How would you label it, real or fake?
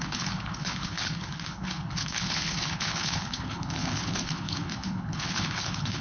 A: fake